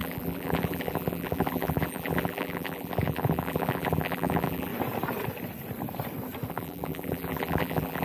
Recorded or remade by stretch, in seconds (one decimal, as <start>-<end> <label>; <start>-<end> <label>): 0.0-4.7 remade; 4.7-6.5 recorded; 6.5-8.0 remade